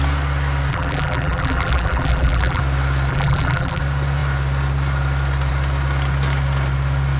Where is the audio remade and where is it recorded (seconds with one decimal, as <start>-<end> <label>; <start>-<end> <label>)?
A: 0.0-0.7 recorded; 0.7-2.6 remade; 2.6-3.1 recorded; 3.1-3.8 remade; 3.8-7.2 recorded